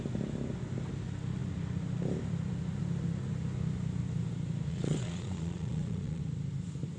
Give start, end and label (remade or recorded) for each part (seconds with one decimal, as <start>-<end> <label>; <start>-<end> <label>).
0.0-4.7 recorded; 4.7-6.2 remade; 6.2-7.0 recorded